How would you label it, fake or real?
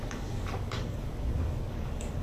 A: fake